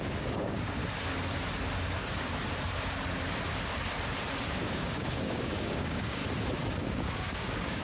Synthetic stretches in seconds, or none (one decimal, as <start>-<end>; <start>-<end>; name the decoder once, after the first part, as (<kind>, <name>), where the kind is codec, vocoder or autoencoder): 0.0-0.8 (codec, DAC); 4.6-6.2; 6.8-7.8